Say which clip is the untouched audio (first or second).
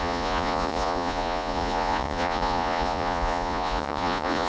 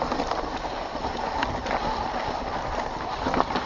second